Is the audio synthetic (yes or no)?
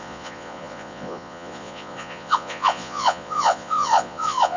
yes